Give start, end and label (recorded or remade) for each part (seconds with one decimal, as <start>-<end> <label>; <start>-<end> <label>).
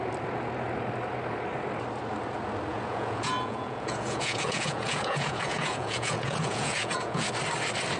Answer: 0.0-2.7 recorded; 2.7-7.3 remade; 7.3-8.0 recorded